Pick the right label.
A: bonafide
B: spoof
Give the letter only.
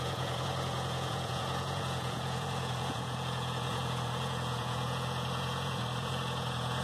B